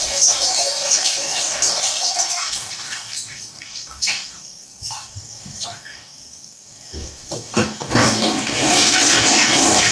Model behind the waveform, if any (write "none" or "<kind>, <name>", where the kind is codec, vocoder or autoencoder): codec, DAC